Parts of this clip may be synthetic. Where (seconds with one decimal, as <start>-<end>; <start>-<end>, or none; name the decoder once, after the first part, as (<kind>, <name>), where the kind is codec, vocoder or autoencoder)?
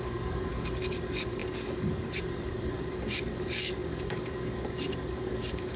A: 0.0-5.8 (codec, DAC)